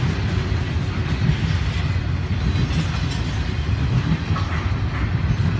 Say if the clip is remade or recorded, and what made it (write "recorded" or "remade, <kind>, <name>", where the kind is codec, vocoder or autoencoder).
recorded